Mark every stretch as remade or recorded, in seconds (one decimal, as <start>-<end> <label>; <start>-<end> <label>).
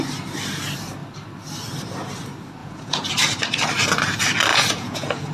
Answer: 0.0-2.6 recorded; 2.6-3.1 remade; 3.1-4.5 recorded; 4.5-5.3 remade